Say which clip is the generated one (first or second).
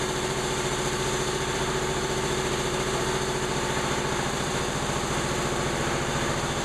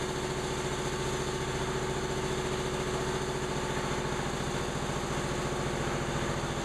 first